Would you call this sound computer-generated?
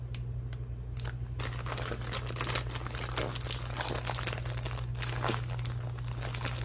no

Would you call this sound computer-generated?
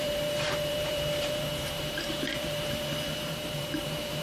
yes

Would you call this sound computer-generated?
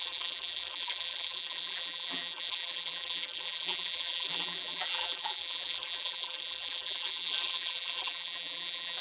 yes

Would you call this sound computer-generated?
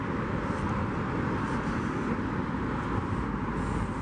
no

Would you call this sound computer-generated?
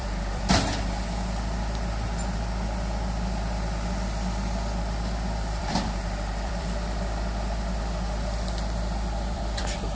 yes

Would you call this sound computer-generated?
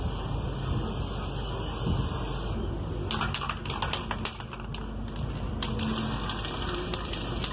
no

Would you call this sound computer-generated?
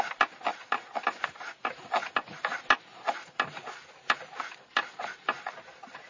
no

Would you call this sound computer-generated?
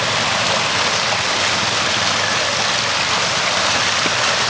no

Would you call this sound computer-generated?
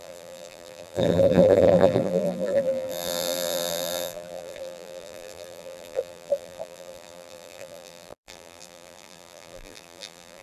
yes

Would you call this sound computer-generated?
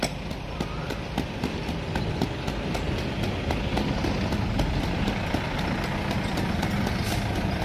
no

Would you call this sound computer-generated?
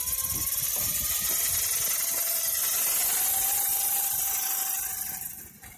no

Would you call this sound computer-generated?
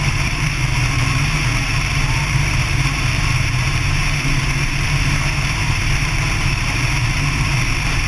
yes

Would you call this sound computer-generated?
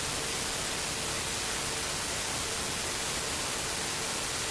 no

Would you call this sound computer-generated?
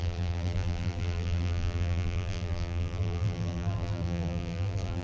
yes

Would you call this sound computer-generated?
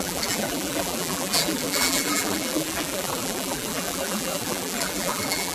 yes